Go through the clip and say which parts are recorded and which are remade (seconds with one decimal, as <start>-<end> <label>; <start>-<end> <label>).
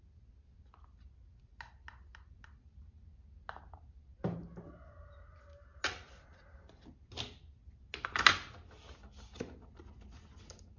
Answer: 0.0-10.8 recorded